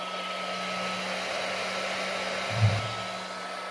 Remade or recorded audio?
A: recorded